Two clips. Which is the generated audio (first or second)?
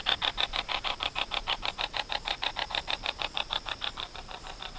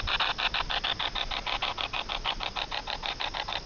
first